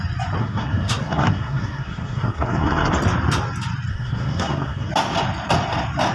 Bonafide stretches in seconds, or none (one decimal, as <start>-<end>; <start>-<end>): 0.0-0.4; 2.9-3.9; 4.9-6.1